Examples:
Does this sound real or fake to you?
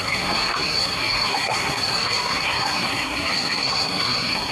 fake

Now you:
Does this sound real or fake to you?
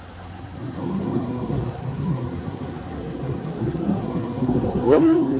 fake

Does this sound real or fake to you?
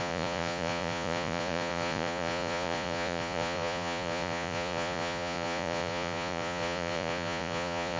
fake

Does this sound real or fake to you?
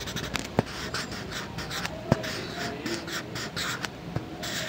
real